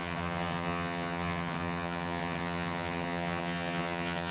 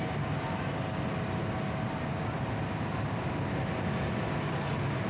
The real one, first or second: second